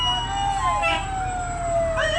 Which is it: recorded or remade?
recorded